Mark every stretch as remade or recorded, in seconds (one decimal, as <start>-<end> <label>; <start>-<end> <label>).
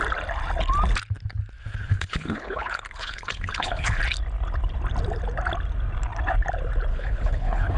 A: 0.0-1.6 recorded; 1.6-4.0 remade; 4.0-6.9 recorded; 6.9-7.8 remade